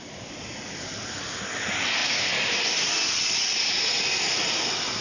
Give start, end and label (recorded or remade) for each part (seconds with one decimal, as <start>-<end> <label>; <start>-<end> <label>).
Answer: 0.0-5.0 recorded